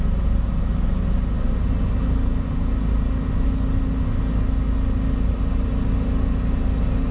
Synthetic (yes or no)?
no